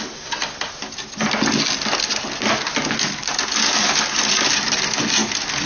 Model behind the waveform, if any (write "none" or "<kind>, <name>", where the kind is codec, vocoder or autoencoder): none